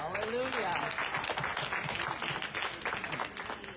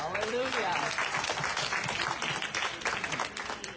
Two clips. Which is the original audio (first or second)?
first